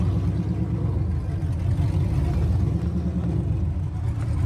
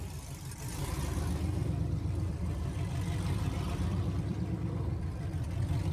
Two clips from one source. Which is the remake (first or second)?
second